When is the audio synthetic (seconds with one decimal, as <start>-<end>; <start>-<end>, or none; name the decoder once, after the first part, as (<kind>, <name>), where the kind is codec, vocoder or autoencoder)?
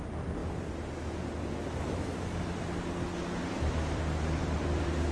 0.0-0.4 (vocoder, BigVGAN v2); 3.5-5.1